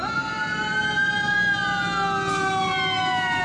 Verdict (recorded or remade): recorded